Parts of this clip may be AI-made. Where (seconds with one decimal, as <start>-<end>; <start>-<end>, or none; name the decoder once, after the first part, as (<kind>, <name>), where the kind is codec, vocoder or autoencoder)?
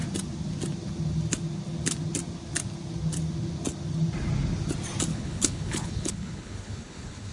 5.1-7.3 (codec, HILCodec)